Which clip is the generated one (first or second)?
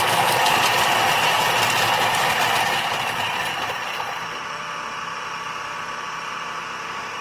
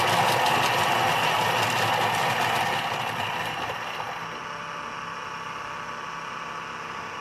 first